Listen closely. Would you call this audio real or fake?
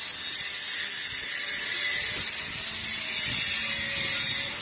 real